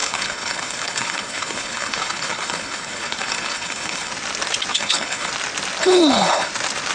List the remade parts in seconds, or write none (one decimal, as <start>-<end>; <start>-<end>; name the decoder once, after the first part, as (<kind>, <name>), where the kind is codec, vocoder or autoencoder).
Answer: 0.0-4.1 (codec, HILCodec); 4.7-5.3; 5.8-6.5